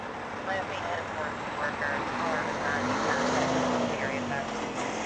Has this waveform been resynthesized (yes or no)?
no